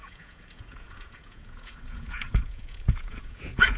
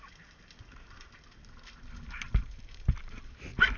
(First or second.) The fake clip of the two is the first